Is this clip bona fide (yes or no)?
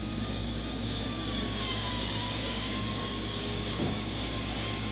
no